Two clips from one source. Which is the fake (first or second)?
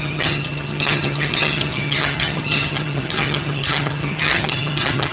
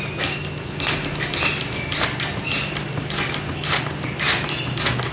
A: first